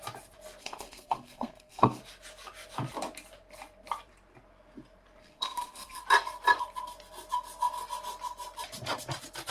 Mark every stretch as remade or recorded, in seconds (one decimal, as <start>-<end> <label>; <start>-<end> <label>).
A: 0.0-0.6 recorded; 0.6-2.0 remade; 2.0-5.2 recorded; 5.2-6.0 remade; 6.0-9.5 recorded